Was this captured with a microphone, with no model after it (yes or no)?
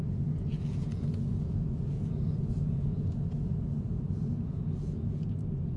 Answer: no